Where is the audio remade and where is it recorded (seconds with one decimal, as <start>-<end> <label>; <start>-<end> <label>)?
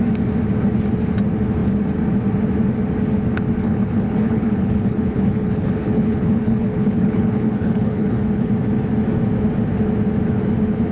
0.0-3.6 recorded; 3.6-8.5 remade; 8.5-10.9 recorded